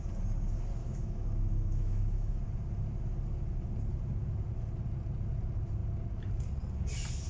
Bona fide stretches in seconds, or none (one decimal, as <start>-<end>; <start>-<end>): 0.0-0.8; 2.4-7.3